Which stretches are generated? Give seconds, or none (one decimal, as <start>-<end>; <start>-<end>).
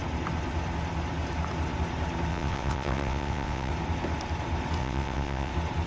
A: 2.3-3.7; 4.8-5.5